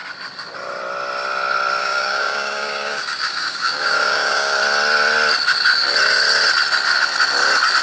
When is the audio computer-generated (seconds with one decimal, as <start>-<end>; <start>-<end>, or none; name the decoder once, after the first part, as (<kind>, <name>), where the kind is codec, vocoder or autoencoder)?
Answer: 1.8-4.6 (codec, DAC)